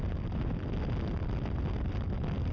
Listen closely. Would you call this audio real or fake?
real